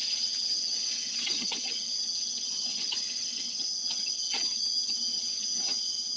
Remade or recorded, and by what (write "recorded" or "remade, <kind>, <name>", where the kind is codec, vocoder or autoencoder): remade, vocoder, HiFi-GAN